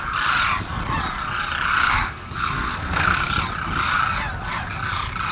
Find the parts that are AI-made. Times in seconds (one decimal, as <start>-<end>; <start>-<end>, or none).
1.8-3.3